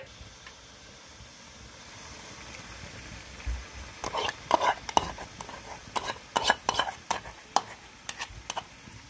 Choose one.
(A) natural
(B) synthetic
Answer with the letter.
A